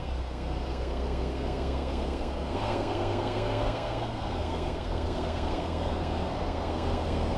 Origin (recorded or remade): remade